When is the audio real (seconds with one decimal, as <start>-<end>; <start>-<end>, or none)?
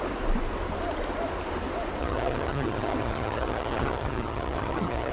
0.0-2.0